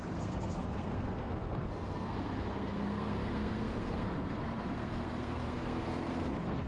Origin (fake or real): fake